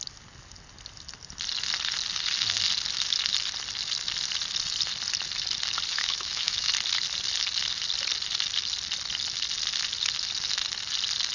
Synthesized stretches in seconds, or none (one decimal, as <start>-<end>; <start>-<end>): 5.9-6.7